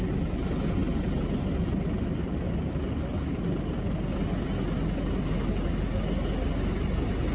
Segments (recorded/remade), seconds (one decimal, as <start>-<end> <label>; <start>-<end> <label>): 0.0-7.3 recorded